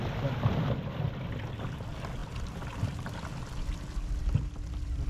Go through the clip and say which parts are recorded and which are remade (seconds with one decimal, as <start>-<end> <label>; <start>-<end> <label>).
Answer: 0.0-5.1 recorded